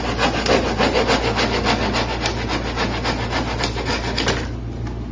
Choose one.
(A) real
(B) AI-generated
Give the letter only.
A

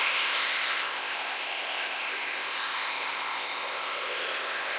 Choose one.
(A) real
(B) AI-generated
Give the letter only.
B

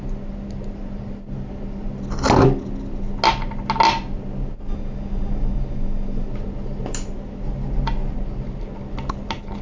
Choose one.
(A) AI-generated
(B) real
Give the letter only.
B